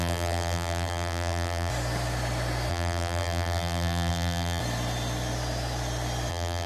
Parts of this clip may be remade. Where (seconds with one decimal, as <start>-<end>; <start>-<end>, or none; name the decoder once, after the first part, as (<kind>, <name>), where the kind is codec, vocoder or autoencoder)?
0.0-1.7 (vocoder, BigVGAN v2); 2.7-4.6; 6.3-6.7